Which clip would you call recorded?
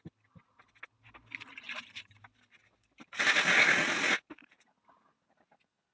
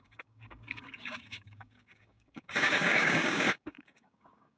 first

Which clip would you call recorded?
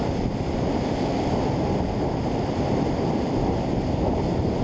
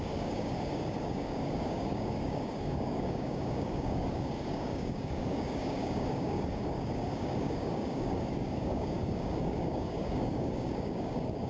first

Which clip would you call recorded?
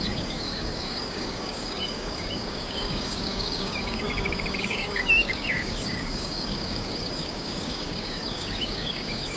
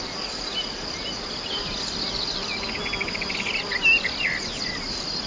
second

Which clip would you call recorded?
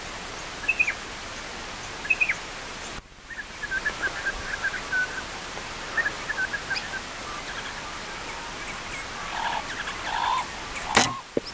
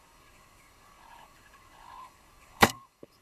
first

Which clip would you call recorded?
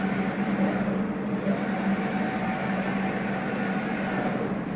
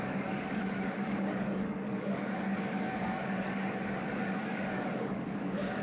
first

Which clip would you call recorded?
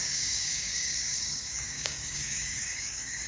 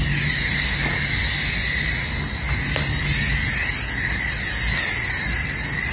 second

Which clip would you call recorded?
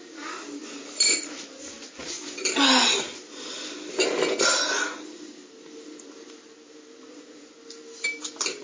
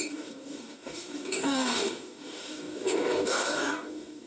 first